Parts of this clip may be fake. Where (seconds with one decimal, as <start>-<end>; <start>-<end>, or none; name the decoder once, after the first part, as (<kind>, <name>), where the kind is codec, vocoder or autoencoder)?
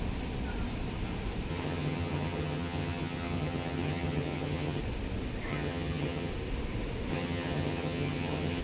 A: 1.5-4.8 (vocoder, HiFi-GAN); 5.5-6.3; 7.1-8.6